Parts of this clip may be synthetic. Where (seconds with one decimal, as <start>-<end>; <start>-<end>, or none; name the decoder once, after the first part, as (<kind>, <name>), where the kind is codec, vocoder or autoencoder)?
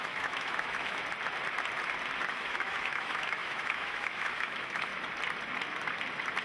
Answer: 0.0-1.0 (autoencoder, DAC-VAE); 2.3-4.9